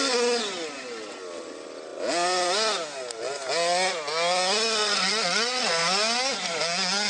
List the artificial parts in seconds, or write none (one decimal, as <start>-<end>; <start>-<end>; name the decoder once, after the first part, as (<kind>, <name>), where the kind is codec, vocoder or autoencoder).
4.8-5.6 (vocoder, WaveNeXt)